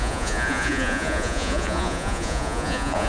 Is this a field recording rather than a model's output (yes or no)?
no